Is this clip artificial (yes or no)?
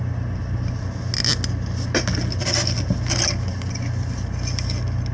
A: no